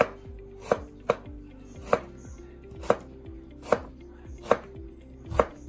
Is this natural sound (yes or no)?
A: yes